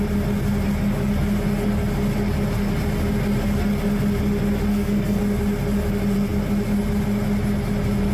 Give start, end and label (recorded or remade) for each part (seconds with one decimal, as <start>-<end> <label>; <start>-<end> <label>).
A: 0.0-4.7 recorded; 4.7-5.2 remade; 5.2-8.1 recorded